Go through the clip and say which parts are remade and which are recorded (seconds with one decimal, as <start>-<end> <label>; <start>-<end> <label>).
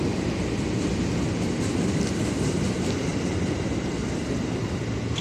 0.0-5.2 recorded